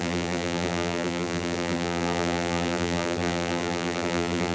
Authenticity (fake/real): fake